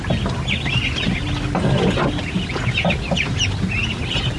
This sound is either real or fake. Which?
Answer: real